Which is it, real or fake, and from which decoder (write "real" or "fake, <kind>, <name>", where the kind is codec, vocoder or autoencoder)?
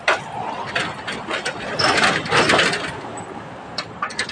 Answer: real